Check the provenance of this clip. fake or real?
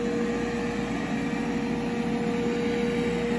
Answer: real